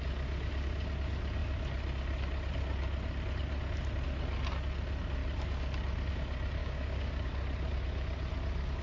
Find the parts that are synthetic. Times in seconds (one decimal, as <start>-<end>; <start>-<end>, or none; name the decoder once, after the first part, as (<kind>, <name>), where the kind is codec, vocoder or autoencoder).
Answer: 6.6-7.3 (codec, DAC)